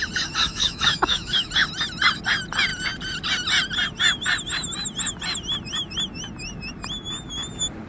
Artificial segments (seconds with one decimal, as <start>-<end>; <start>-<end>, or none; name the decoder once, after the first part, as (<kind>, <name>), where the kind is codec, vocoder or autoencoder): 0.4-1.5 (autoencoder, DAC-VAE)